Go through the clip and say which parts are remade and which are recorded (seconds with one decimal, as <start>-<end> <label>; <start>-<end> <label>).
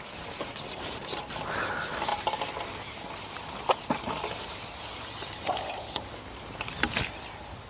0.0-7.7 recorded